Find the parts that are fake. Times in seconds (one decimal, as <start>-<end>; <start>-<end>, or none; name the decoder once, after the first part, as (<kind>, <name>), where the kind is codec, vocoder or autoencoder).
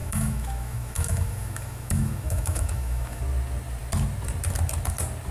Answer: 0.0-3.2 (autoencoder, DAC-VAE)